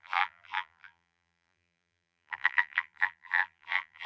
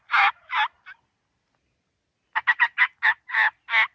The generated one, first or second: first